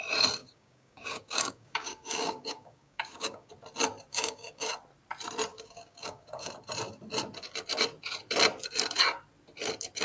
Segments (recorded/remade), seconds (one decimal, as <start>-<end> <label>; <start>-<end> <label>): 0.0-0.4 recorded; 0.4-3.5 remade; 3.5-4.1 recorded; 4.1-4.7 remade; 4.7-5.5 recorded; 5.5-6.5 remade; 6.5-10.0 recorded